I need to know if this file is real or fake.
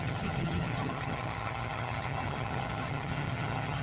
fake